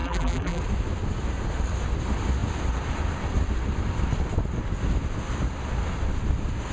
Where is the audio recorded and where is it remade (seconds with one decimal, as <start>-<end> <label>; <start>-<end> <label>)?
0.0-0.6 remade; 0.6-6.7 recorded